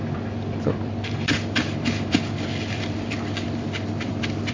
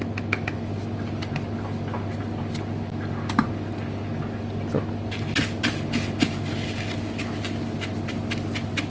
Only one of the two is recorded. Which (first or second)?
second